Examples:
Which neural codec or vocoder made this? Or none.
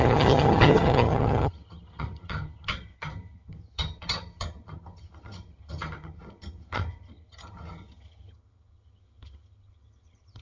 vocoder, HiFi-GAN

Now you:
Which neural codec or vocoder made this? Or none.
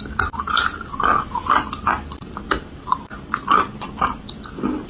none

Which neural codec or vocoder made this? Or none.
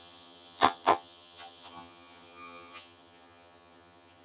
vocoder, HiFi-GAN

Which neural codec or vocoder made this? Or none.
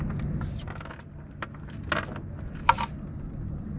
none